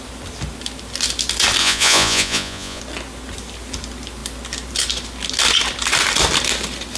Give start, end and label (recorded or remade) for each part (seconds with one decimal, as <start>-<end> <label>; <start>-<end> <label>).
0.0-1.6 recorded; 1.6-2.8 remade; 2.8-7.0 recorded

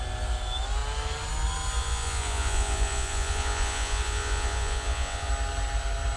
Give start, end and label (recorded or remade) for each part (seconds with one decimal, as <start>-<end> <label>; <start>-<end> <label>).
0.0-1.8 recorded; 1.8-5.3 remade; 5.3-6.2 recorded

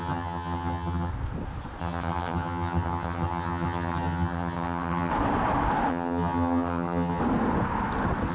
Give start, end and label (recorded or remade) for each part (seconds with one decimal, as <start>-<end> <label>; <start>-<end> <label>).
0.0-1.1 remade; 1.1-1.8 recorded; 1.8-5.1 remade; 5.1-5.9 recorded; 5.9-7.2 remade; 7.2-8.3 recorded

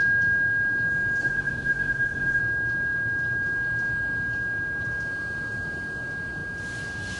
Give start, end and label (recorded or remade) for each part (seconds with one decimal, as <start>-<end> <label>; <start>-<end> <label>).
0.0-1.2 recorded; 1.2-2.4 remade; 2.4-7.2 recorded

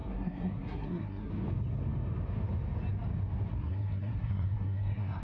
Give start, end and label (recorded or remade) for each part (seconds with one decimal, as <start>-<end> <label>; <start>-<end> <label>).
0.0-1.3 remade; 1.3-3.5 recorded; 3.5-5.2 remade